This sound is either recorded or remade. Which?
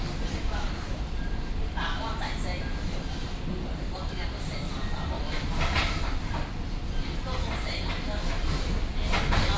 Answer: recorded